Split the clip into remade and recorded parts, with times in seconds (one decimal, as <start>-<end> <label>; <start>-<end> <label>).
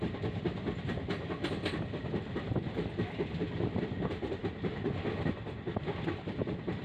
0.0-6.8 recorded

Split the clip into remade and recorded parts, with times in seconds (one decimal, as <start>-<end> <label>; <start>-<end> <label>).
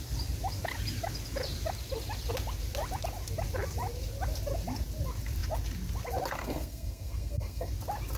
0.0-6.4 recorded; 6.4-7.7 remade; 7.7-8.2 recorded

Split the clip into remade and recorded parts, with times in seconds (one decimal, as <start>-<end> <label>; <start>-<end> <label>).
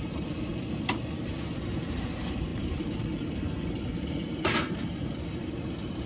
0.0-0.5 remade; 0.5-1.9 recorded; 1.9-6.1 remade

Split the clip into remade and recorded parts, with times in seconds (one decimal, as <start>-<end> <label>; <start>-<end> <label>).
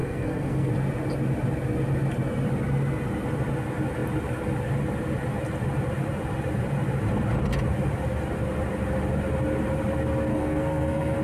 0.0-0.7 remade; 0.7-10.3 recorded; 10.3-11.2 remade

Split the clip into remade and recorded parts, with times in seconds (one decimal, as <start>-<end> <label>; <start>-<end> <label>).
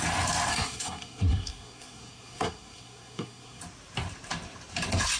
0.0-0.5 recorded; 0.5-3.6 remade; 3.6-5.2 recorded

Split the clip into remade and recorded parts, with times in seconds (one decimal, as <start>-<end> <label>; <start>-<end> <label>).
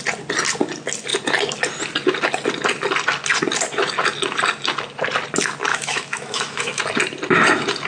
0.0-5.7 recorded; 5.7-6.8 remade; 6.8-7.9 recorded